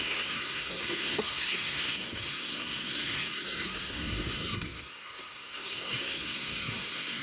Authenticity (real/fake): fake